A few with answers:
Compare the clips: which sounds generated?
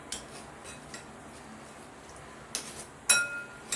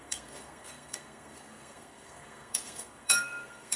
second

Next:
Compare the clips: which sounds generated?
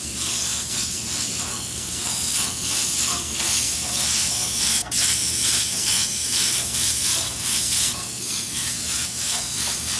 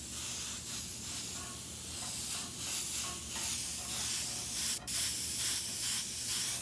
first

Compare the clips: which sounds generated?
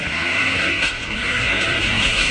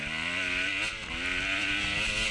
first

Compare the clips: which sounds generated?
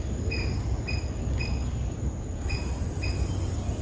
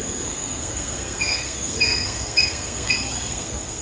second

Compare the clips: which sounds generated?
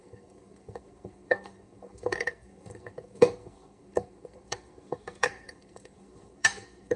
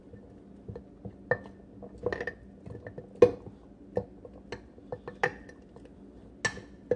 first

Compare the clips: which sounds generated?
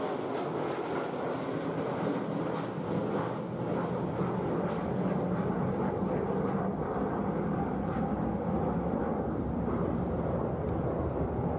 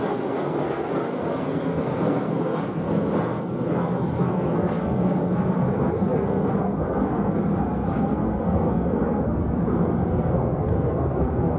second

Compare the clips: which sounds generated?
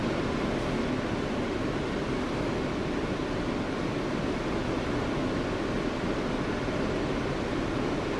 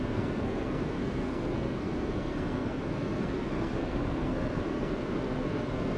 second